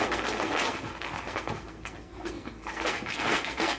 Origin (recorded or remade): remade